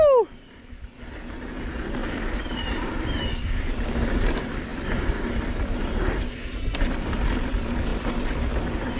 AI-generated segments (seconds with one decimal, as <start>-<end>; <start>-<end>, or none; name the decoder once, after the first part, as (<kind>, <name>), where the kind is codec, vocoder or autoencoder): 2.0-3.0 (vocoder, BigVGAN v2)